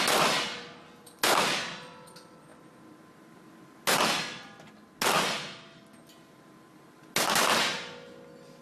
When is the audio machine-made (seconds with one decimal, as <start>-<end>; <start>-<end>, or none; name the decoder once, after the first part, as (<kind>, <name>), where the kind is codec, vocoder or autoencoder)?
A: none